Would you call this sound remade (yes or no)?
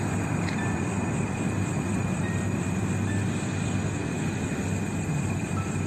no